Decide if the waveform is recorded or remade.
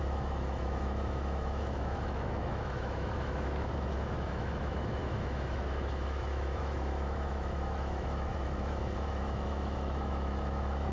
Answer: remade